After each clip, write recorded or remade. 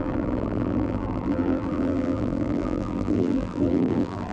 remade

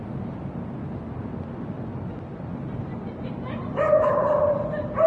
recorded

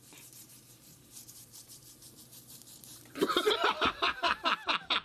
remade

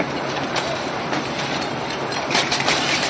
remade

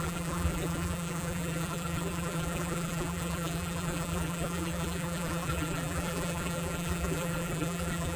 remade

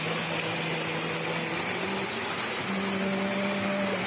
recorded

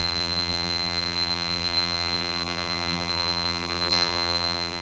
remade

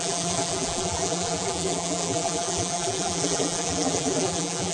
remade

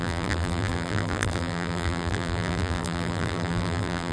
remade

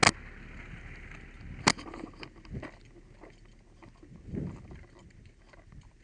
recorded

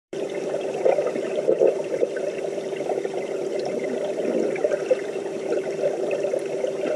remade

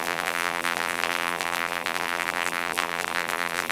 remade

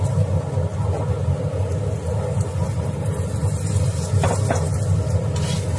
recorded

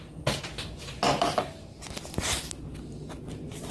recorded